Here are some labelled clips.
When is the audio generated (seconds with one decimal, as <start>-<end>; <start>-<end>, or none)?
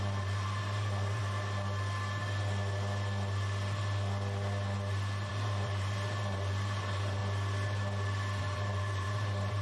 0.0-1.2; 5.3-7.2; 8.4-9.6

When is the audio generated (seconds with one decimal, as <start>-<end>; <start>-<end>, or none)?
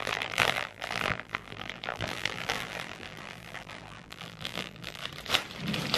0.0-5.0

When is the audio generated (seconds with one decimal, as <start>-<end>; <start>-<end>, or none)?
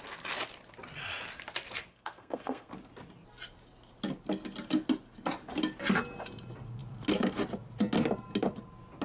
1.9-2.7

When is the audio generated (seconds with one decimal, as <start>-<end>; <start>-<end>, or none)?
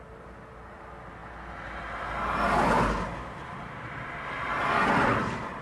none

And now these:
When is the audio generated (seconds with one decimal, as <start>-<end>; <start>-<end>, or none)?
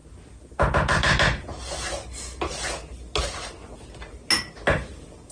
none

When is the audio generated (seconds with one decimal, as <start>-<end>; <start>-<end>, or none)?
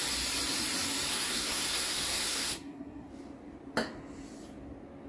1.1-3.1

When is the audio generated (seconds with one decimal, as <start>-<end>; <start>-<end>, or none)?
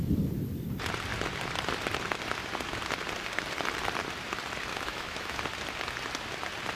4.7-5.4